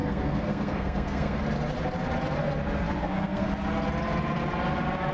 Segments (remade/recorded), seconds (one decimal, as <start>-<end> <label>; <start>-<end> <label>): 0.0-1.4 remade; 1.4-3.0 recorded; 3.0-3.5 remade; 3.5-5.1 recorded